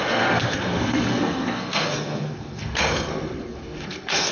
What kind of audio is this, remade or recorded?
remade